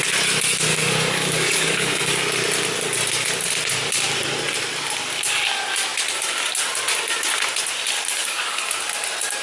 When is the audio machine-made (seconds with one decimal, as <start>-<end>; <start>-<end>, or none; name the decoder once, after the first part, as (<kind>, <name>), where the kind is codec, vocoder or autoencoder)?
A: 0.7-2.1 (codec, DAC); 8.1-8.7